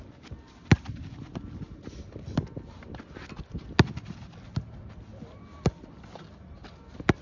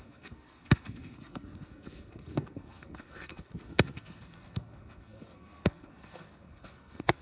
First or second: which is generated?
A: second